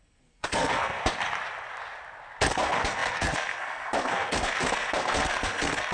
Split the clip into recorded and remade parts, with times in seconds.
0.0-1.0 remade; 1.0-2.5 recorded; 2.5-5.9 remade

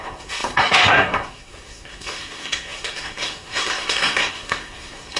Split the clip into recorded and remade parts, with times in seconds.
0.0-5.2 remade

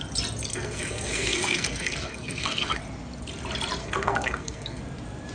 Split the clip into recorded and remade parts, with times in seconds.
0.0-0.5 recorded; 0.5-2.8 remade; 2.8-3.8 recorded; 3.8-4.8 remade; 4.8-5.3 recorded

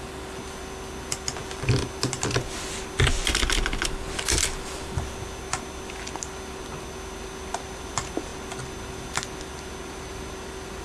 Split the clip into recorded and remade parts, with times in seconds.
0.0-10.8 recorded

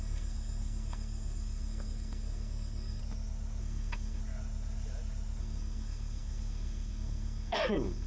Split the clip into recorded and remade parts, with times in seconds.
0.0-3.0 remade; 3.0-3.6 recorded; 3.6-4.2 remade; 4.2-5.4 recorded; 5.4-8.1 remade

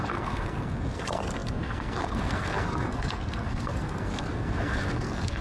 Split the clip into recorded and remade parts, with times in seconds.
0.0-5.4 remade

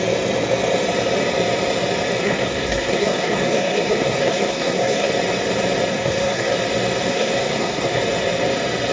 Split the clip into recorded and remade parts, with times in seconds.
0.0-2.2 recorded; 2.2-5.1 remade; 5.1-5.9 recorded; 5.9-6.5 remade; 6.5-7.1 recorded; 7.1-8.0 remade; 8.0-8.9 recorded

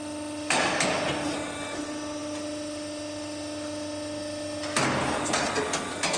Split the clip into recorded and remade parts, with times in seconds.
0.0-6.2 recorded